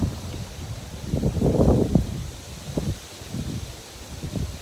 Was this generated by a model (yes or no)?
no